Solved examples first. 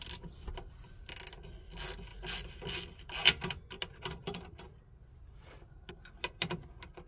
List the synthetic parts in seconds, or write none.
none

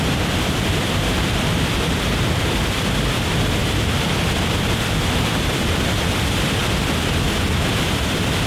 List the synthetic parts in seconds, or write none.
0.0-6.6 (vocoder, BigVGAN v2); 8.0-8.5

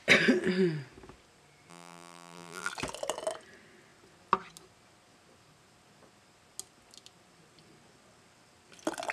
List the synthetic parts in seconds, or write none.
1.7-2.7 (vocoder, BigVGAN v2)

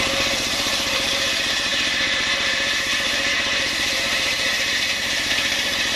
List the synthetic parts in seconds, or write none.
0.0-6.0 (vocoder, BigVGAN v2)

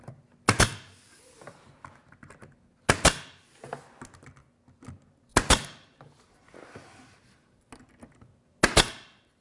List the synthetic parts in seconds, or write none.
none

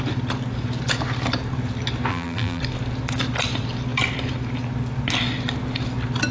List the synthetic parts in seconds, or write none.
2.1-2.6 (vocoder, BigVGAN v2)

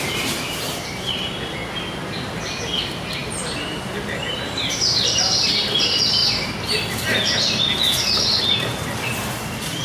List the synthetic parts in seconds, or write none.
0.0-1.6 (vocoder, BigVGAN v2); 2.8-6.2; 8.4-9.8